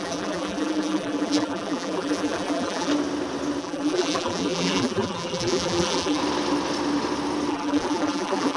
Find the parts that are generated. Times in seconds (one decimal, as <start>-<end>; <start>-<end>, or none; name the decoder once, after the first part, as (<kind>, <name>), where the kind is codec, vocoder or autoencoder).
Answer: 0.0-2.9 (vocoder, BigVGAN v2); 3.6-6.2; 7.5-8.6